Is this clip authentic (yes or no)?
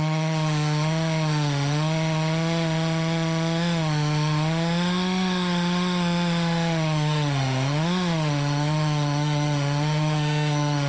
no